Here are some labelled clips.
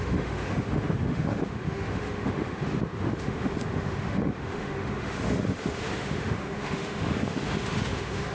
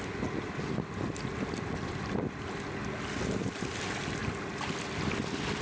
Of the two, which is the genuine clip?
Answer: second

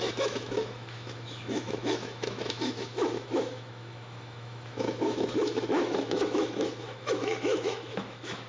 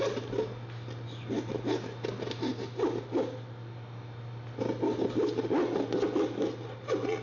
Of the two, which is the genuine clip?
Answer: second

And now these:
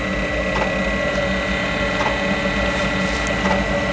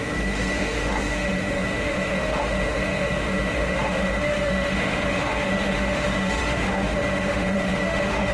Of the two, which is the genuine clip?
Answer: first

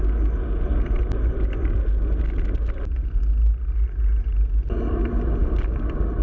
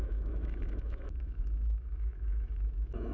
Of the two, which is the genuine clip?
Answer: first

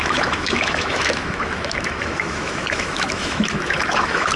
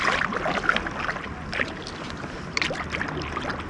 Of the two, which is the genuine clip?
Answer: second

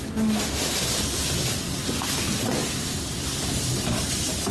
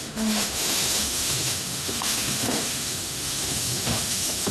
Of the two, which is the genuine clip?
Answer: first